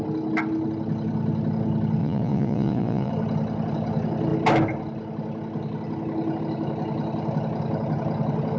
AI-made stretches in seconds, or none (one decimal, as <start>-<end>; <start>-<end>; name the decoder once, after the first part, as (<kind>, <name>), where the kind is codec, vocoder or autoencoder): 2.0-3.1 (vocoder, Vocos)